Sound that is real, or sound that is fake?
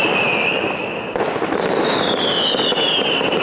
real